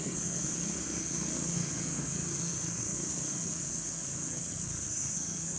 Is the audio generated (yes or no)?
yes